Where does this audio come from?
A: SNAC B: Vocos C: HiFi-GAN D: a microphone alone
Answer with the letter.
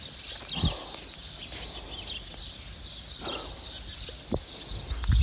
D